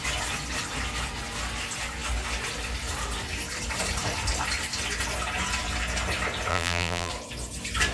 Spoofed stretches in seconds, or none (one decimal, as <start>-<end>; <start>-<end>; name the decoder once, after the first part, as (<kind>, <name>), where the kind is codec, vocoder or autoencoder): 6.5-7.1 (vocoder, BigVGAN v2)